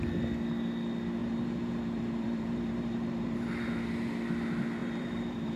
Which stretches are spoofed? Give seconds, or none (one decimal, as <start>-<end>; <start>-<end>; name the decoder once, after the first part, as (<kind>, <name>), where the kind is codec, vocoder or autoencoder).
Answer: 1.2-3.7 (vocoder, BigVGAN v2); 4.8-5.6